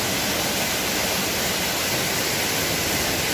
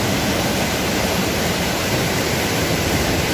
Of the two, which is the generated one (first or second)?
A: second